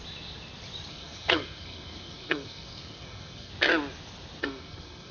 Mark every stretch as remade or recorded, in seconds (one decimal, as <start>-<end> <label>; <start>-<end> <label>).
0.0-0.9 recorded; 0.9-3.5 remade; 3.5-4.4 recorded; 4.4-5.1 remade